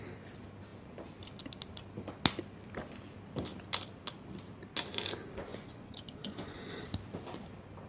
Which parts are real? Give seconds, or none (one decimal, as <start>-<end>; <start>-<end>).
0.0-5.5; 6.8-7.9